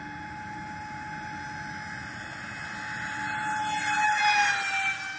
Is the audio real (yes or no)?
yes